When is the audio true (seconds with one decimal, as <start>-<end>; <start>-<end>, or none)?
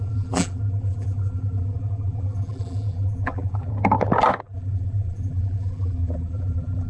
3.7-4.4